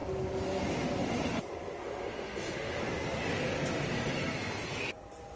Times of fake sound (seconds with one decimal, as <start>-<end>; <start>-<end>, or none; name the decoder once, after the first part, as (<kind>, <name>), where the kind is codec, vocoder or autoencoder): 1.8-2.8 (autoencoder, DAC-VAE)